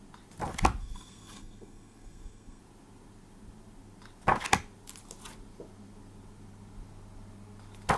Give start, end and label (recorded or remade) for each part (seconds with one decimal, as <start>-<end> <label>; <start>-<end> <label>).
0.0-0.8 recorded; 0.8-2.6 remade; 2.6-8.0 recorded